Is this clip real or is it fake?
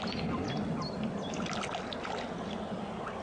real